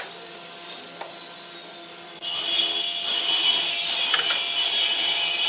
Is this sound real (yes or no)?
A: yes